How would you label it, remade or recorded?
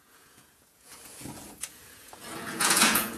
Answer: remade